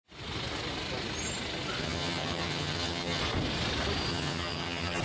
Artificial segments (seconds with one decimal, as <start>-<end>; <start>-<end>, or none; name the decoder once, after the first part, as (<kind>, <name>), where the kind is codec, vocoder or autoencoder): 1.8-3.2 (vocoder, HiFi-GAN); 4.1-5.0